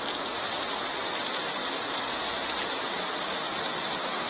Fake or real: real